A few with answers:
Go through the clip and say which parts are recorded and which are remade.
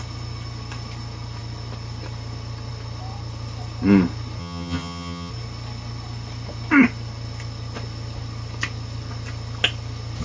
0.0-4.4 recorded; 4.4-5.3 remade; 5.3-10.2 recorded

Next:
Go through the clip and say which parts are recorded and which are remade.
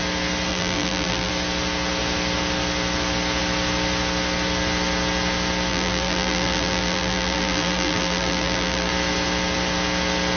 0.0-0.5 recorded; 0.5-1.3 remade; 1.3-5.7 recorded; 5.7-8.9 remade; 8.9-10.4 recorded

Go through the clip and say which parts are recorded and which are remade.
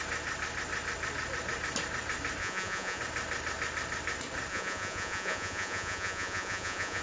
0.0-2.4 recorded; 2.4-3.0 remade; 3.0-4.5 recorded; 4.5-7.0 remade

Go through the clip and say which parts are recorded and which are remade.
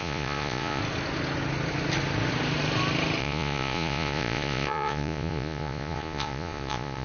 0.0-0.8 remade; 0.8-3.2 recorded; 3.2-7.0 remade